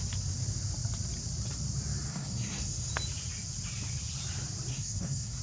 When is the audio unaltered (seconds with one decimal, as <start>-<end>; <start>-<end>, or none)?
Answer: 0.0-2.1; 2.9-4.7